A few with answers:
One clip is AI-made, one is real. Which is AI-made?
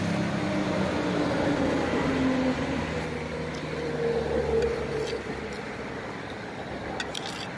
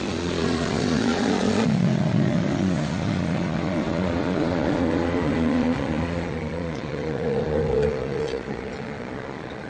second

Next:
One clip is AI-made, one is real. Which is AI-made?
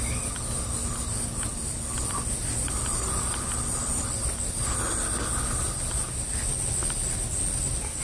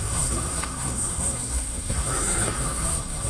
second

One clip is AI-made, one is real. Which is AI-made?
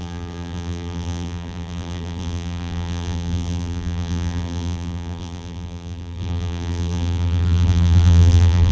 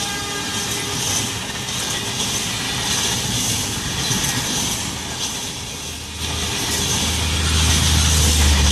first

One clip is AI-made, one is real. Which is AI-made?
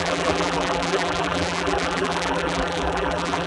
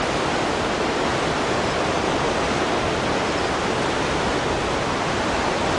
first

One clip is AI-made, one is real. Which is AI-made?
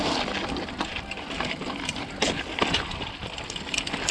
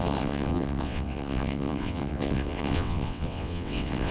second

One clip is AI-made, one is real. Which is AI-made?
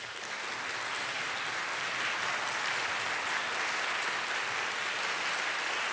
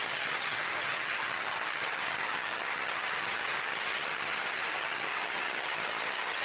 second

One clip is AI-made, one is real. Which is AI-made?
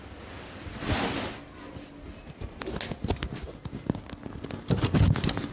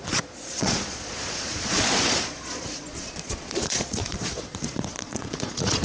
second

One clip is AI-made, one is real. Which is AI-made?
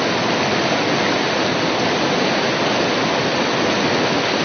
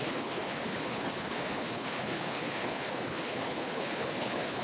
second